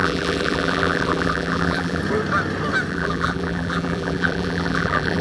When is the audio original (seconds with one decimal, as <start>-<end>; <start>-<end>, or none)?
2.0-2.9